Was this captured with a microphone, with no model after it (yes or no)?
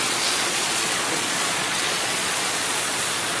no